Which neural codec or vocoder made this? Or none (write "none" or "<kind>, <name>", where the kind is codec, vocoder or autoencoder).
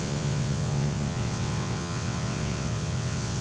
vocoder, WaveNeXt